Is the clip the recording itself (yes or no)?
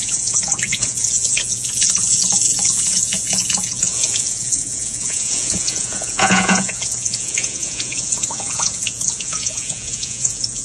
no